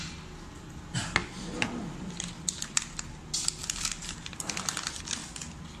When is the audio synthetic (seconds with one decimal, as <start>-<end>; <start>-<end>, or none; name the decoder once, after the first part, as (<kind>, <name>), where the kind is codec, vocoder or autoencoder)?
none